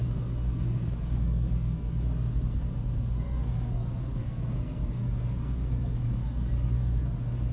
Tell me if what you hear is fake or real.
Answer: fake